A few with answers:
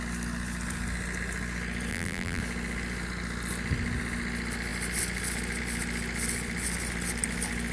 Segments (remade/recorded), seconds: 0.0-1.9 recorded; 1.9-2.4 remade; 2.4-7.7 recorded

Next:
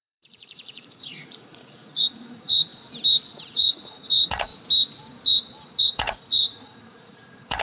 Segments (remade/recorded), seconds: 0.0-2.7 remade; 2.7-3.4 recorded; 3.4-4.5 remade; 4.5-5.8 recorded; 5.8-7.6 remade